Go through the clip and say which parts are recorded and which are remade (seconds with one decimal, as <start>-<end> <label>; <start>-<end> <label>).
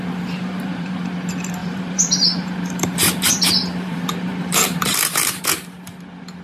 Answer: 0.0-0.4 recorded; 0.4-1.0 remade; 1.0-1.6 recorded; 1.6-5.4 remade; 5.4-6.4 recorded